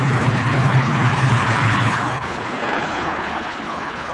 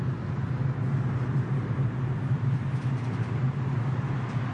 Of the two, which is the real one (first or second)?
second